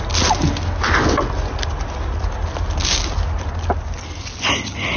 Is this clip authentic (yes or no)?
yes